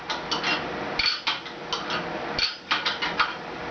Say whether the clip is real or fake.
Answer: real